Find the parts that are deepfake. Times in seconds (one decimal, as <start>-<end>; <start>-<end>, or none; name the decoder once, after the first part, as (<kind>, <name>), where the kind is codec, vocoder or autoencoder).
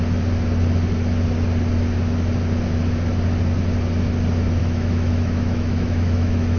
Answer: 4.6-6.6 (autoencoder, DAC-VAE)